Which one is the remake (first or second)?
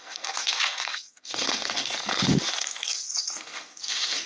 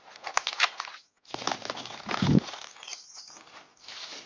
first